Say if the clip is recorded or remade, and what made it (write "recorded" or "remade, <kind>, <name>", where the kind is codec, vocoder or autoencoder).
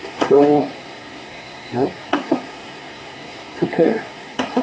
remade, codec, SNAC